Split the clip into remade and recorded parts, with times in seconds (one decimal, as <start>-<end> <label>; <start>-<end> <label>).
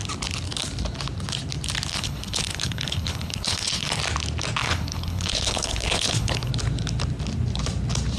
0.0-1.9 recorded; 1.9-4.0 remade; 4.0-4.6 recorded; 4.6-6.5 remade; 6.5-8.2 recorded